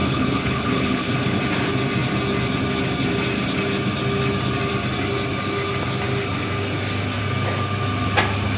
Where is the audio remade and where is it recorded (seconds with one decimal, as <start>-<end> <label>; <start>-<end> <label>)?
0.0-1.4 remade; 1.4-8.6 recorded